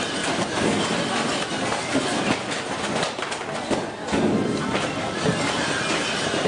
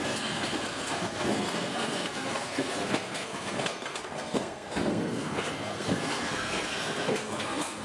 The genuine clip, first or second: first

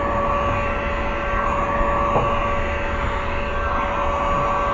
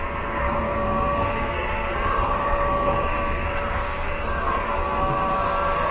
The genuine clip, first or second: first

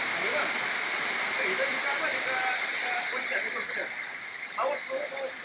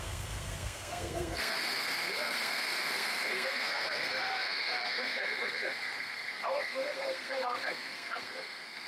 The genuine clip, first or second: first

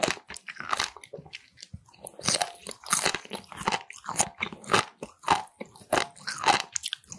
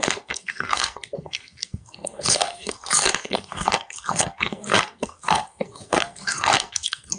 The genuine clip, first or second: first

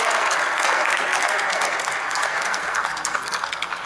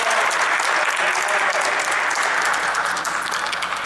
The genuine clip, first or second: second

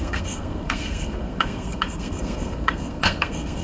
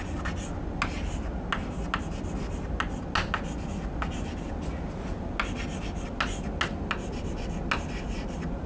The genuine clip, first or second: second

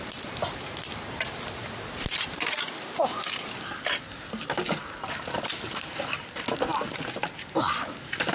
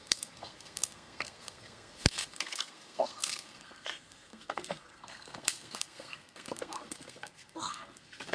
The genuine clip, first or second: first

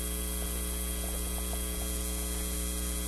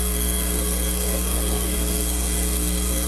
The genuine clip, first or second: first